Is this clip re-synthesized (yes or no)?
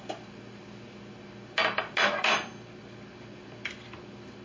no